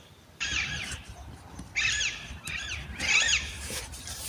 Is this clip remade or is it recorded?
remade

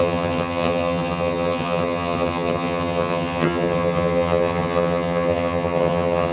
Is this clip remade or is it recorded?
remade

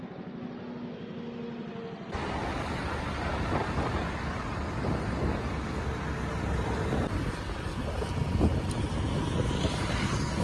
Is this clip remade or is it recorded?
recorded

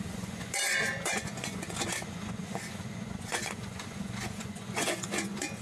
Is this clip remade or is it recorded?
remade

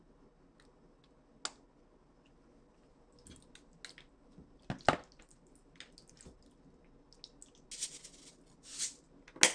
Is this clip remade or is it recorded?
recorded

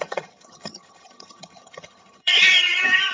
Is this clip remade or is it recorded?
remade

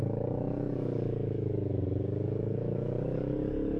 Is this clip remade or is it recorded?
remade